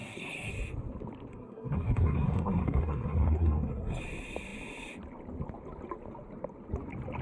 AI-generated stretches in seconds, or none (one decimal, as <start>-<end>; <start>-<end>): 0.0-0.5; 1.3-4.0